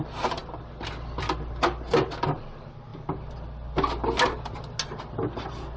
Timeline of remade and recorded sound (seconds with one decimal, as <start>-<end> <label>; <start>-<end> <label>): 0.0-5.8 recorded